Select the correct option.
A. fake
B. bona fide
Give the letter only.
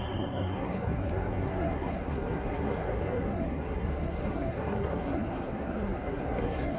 A